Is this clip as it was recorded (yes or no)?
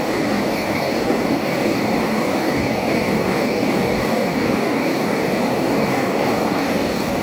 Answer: no